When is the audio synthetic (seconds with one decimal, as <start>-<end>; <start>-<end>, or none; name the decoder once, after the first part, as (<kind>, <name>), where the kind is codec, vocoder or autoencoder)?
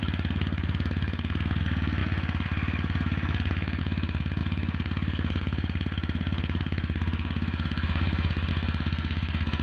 0.0-9.6 (codec, SNAC)